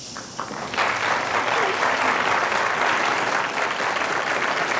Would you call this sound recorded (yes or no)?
yes